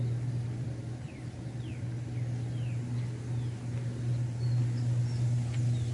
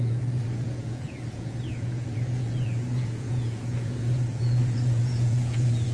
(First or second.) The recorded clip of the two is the first